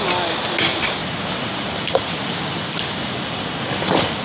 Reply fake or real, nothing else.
real